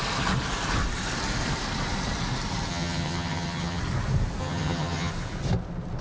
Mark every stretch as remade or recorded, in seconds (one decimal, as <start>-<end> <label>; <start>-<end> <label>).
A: 0.0-2.7 recorded; 2.7-3.8 remade; 3.8-4.4 recorded; 4.4-5.1 remade; 5.1-6.0 recorded